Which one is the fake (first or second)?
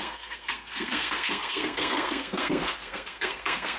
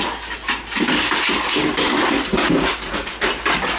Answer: first